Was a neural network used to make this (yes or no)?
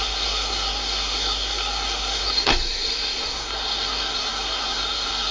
yes